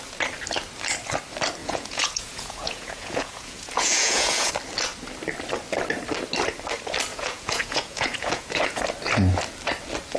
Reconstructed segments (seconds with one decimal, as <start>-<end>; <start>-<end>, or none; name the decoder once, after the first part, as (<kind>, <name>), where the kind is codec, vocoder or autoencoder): 1.6-4.5 (vocoder, Vocos); 7.1-8.8